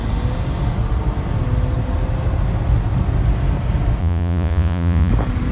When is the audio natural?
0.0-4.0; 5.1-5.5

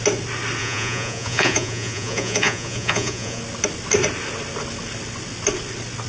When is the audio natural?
0.0-0.6; 3.4-6.1

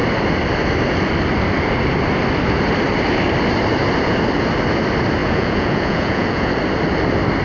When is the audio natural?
0.0-5.2; 6.5-7.4

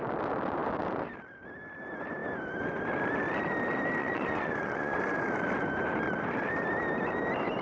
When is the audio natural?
0.0-4.0; 5.2-7.6

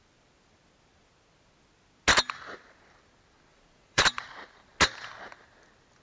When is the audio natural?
0.0-3.5; 4.0-6.0

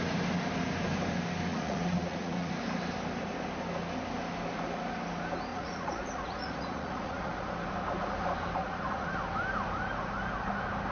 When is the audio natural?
0.0-1.5; 2.5-5.5; 7.3-8.6; 9.1-10.9

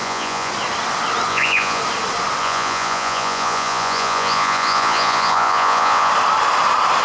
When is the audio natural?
0.5-1.3; 1.8-2.4; 6.1-7.0